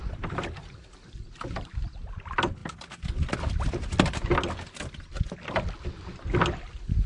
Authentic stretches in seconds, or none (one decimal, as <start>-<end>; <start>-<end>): 0.0-7.1